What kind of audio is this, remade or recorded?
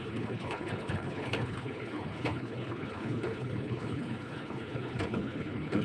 remade